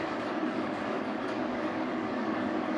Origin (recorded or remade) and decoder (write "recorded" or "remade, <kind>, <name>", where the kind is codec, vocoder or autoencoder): remade, codec, DAC